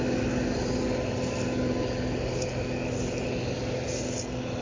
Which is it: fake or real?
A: real